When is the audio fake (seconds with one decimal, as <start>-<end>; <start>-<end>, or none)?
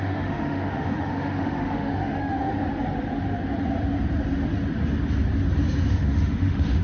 0.0-2.5; 5.9-6.8